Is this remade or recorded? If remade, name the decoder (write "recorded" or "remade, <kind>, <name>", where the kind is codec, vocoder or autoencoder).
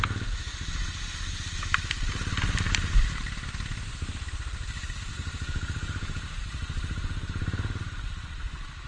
recorded